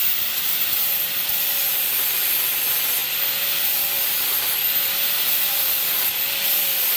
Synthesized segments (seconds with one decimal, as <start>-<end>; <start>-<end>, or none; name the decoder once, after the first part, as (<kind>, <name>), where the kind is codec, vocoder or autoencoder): 0.0-7.0 (vocoder, BigVGAN v2)